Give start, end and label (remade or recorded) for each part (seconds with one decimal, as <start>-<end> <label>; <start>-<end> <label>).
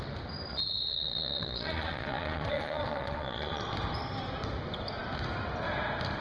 0.0-0.5 recorded; 0.5-3.6 remade; 3.6-6.2 recorded